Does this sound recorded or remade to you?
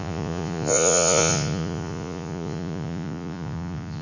remade